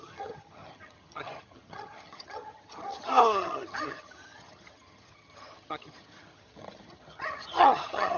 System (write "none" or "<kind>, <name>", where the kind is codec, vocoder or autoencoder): vocoder, HiFi-GAN